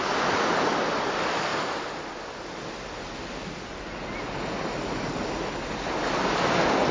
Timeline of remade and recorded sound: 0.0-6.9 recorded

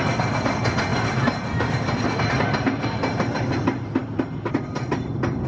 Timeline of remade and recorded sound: 0.0-5.5 recorded

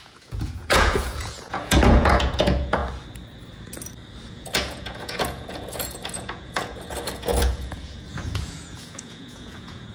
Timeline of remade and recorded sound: 0.0-2.8 remade; 2.8-4.3 recorded; 4.3-9.9 remade

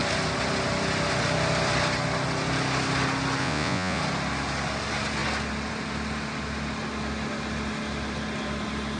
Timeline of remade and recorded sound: 0.0-3.4 recorded; 3.4-4.0 remade; 4.0-9.0 recorded

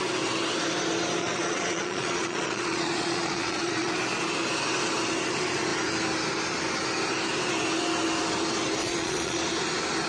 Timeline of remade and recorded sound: 0.0-1.2 recorded; 1.2-3.9 remade; 3.9-8.8 recorded; 8.8-9.4 remade; 9.4-10.1 recorded

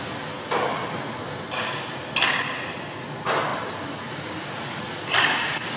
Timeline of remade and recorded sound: 0.0-5.8 recorded